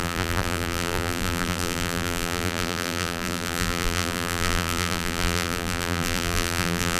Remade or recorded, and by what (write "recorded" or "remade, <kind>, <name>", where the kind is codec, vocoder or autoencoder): remade, vocoder, BigVGAN v2